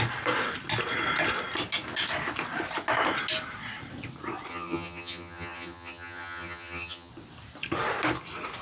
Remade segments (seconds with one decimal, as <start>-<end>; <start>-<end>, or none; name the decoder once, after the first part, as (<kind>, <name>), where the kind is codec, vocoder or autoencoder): 4.5-7.1 (vocoder, HiFi-GAN)